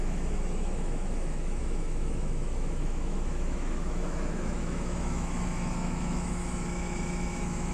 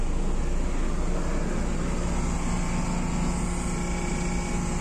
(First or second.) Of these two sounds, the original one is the second